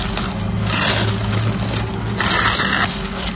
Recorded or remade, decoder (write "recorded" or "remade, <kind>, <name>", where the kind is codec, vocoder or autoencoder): recorded